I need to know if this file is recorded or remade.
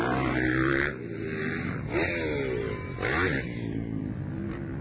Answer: recorded